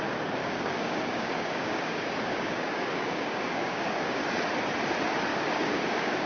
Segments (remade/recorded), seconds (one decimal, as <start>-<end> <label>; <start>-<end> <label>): 0.0-0.4 recorded; 0.4-4.2 remade; 4.2-5.3 recorded; 5.3-6.3 remade